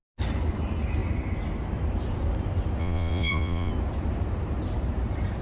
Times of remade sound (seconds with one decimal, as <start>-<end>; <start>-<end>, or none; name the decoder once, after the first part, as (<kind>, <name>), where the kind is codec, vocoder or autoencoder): 2.8-3.7 (vocoder, Vocos)